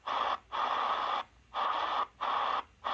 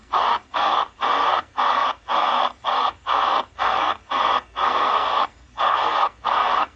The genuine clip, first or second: first